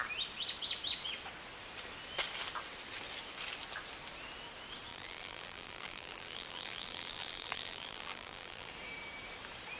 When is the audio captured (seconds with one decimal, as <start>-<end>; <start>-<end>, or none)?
0.0-4.9; 8.7-9.8